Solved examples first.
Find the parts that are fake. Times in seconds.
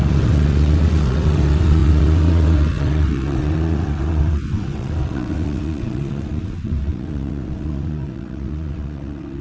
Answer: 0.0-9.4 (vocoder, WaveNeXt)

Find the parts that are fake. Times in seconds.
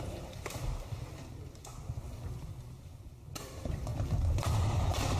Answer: 0.0-1.7 (vocoder, BigVGAN v2); 2.4-5.2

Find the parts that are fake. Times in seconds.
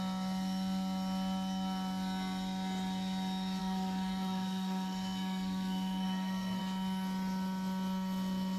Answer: 3.6-6.6 (codec, SNAC)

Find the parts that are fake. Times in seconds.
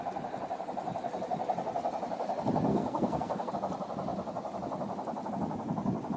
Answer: 2.7-3.5 (codec, SNAC)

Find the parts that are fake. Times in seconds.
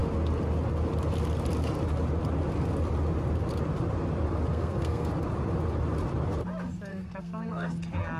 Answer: 4.5-5.1 (codec, SNAC); 6.9-7.7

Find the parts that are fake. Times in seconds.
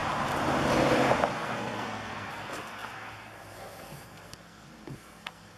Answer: 1.3-5.6 (codec, SNAC)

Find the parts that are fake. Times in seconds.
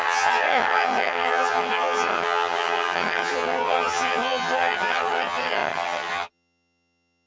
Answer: 0.0-7.3 (vocoder, HiFi-GAN)